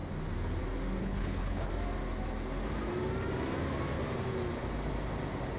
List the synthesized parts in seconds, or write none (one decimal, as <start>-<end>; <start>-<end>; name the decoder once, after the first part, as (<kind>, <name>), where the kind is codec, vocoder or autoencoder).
1.0-1.7 (codec, HILCodec)